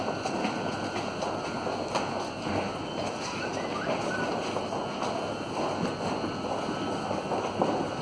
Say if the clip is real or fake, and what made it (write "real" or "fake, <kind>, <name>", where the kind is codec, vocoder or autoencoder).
real